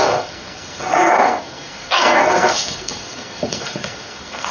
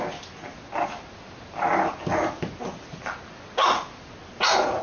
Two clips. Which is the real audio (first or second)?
second